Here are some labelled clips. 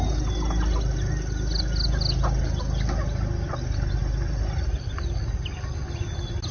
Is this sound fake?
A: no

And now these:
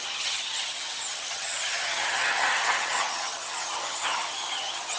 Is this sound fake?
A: yes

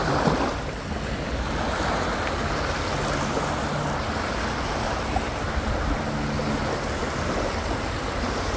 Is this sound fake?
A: no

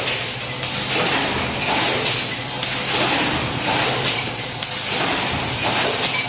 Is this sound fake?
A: no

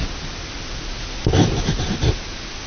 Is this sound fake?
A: no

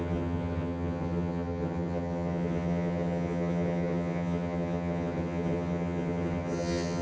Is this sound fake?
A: yes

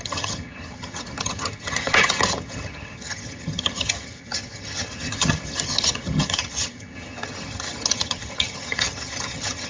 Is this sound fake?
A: yes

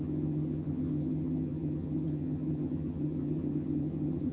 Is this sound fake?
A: yes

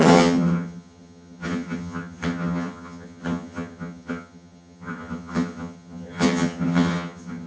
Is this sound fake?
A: yes